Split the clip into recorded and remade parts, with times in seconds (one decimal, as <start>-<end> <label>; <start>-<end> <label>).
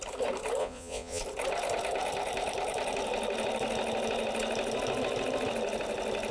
0.0-0.6 recorded; 0.6-1.2 remade; 1.2-6.3 recorded